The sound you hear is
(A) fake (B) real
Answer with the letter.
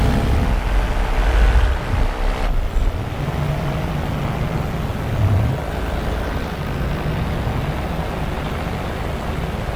B